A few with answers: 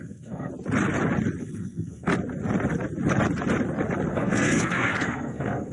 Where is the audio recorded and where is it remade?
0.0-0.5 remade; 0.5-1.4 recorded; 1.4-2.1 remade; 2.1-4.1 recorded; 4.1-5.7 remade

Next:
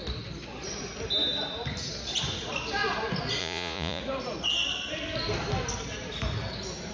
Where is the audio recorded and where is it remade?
0.0-3.4 recorded; 3.4-4.0 remade; 4.0-6.9 recorded

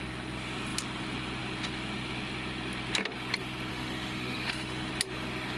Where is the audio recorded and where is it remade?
0.0-3.7 recorded; 3.7-4.9 remade; 4.9-5.6 recorded

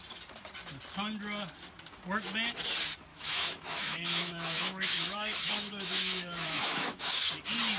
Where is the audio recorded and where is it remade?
0.0-3.1 recorded; 3.1-7.3 remade; 7.3-7.8 recorded

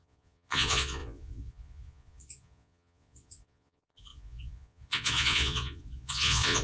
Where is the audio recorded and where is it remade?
0.0-6.6 remade

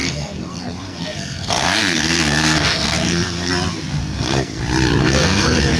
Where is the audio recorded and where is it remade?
0.0-3.5 remade; 3.5-4.0 recorded; 4.0-4.6 remade; 4.6-5.0 recorded; 5.0-5.8 remade

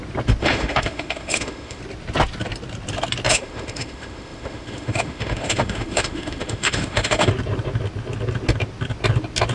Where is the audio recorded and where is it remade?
0.0-0.4 recorded; 0.4-1.8 remade; 1.8-3.3 recorded; 3.3-7.3 remade; 7.3-9.5 recorded

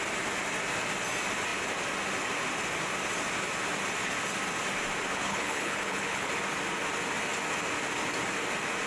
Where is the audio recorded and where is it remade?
0.0-5.1 recorded; 5.1-6.3 remade; 6.3-8.9 recorded